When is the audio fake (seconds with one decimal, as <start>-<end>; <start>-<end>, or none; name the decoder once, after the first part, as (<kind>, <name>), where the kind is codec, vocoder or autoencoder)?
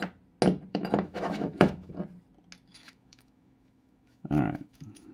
0.7-1.9 (autoencoder, DAC-VAE); 2.7-5.1